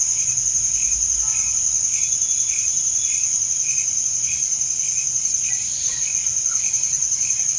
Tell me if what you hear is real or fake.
real